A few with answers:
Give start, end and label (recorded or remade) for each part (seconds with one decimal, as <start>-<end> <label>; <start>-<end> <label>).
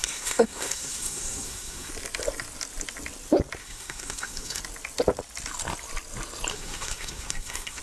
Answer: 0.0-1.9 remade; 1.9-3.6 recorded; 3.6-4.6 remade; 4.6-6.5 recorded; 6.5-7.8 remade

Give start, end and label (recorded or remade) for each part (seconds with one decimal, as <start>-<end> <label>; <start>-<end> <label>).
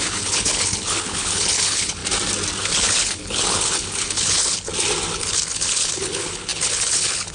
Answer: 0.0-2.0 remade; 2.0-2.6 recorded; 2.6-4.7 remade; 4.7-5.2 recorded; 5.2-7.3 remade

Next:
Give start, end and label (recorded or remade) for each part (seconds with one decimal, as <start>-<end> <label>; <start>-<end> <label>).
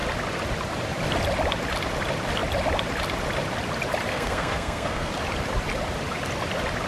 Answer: 0.0-4.1 recorded; 4.1-5.1 remade; 5.1-6.9 recorded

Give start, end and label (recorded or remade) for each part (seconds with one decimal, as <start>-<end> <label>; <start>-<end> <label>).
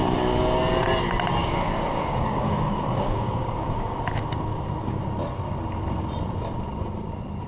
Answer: 0.0-1.4 recorded; 1.4-4.0 remade; 4.0-7.5 recorded